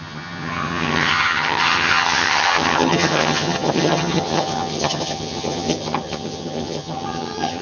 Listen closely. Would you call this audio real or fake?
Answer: fake